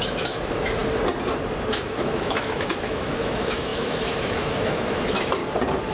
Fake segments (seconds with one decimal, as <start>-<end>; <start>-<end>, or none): 0.0-0.8; 1.7-5.4